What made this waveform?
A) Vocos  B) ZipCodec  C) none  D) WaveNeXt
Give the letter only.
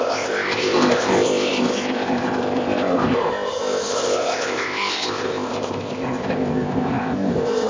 B